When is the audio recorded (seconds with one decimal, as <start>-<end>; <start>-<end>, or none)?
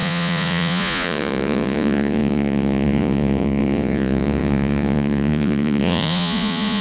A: none